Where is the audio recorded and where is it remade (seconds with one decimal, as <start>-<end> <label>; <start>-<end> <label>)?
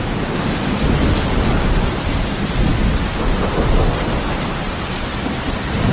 0.0-5.9 recorded